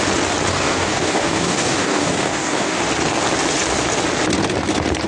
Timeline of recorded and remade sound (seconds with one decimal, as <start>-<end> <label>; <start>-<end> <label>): 0.0-0.5 recorded; 0.5-2.8 remade; 2.8-5.1 recorded